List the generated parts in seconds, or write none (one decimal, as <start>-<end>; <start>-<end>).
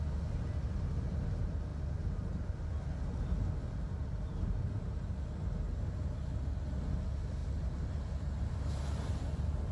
none